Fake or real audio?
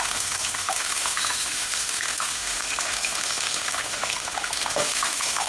fake